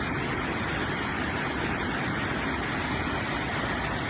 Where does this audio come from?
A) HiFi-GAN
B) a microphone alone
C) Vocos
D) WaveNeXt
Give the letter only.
B